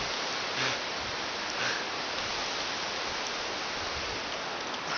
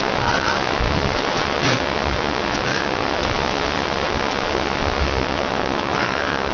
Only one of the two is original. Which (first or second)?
first